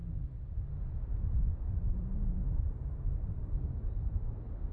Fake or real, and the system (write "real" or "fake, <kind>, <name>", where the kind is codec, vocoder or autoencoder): real